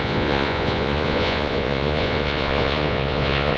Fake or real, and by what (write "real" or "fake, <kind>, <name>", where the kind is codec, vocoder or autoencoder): fake, vocoder, Vocos